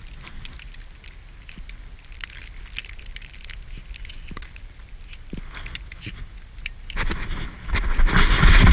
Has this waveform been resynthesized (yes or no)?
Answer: no